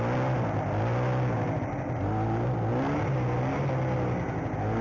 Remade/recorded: recorded